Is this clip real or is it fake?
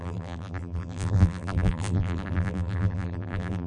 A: fake